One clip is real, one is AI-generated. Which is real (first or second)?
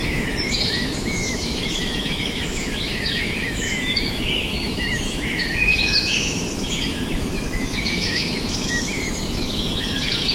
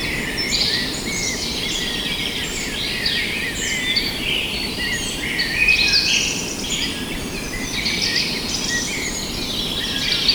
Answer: second